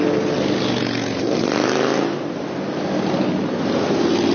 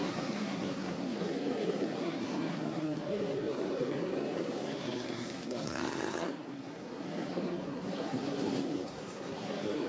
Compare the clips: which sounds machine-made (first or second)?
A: second